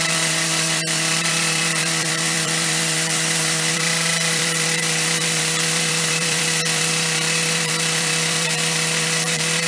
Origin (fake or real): fake